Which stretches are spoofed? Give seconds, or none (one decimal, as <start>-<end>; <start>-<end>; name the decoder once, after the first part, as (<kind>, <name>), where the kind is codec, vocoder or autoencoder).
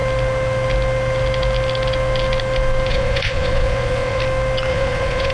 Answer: 2.9-4.2 (vocoder, Vocos); 4.7-5.3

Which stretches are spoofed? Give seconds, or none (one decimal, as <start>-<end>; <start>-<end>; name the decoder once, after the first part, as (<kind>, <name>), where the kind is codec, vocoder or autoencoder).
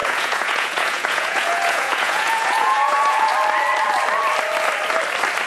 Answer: 0.0-3.3 (vocoder, Vocos)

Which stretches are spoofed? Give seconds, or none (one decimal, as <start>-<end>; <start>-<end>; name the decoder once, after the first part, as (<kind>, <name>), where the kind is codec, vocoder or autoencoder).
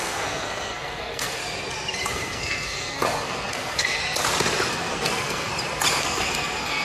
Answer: 0.0-1.4 (codec, SNAC); 2.1-4.0; 4.7-5.5; 6.0-6.8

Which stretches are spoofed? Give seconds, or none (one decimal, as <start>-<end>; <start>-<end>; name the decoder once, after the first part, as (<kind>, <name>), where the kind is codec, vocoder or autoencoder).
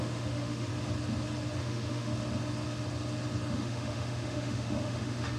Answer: 0.0-0.7 (autoencoder, DAC-VAE); 1.6-2.1; 3.5-5.4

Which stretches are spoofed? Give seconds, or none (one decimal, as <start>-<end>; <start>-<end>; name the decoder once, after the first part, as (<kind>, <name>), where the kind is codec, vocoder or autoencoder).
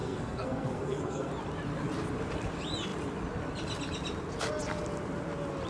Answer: 0.0-1.3 (codec, SNAC)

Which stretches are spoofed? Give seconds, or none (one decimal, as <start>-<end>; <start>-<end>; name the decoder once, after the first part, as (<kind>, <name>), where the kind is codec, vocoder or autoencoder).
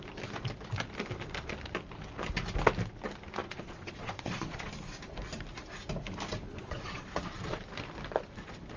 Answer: 3.4-4.7 (vocoder, Vocos); 6.5-7.6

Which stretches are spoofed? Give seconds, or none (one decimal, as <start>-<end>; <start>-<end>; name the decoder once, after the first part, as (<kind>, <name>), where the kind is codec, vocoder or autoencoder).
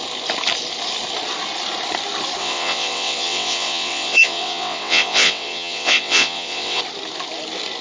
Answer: 2.4-6.8 (vocoder, WaveNeXt)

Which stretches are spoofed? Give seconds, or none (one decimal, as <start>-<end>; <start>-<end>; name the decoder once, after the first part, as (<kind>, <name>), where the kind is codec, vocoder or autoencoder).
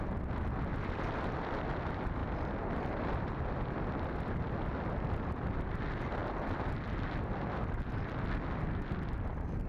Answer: 0.7-1.3 (vocoder, BigVGAN v2); 2.2-5.8